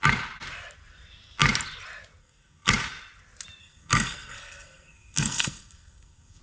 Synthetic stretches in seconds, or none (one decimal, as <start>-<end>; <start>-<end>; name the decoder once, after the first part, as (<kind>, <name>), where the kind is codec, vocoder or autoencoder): 2.2-2.7 (codec, SNAC); 3.6-6.4